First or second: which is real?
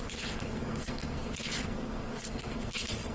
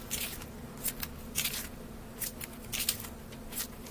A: second